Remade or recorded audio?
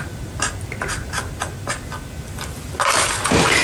recorded